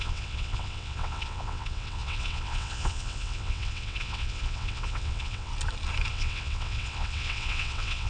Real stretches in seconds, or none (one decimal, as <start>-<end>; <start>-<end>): 5.5-6.1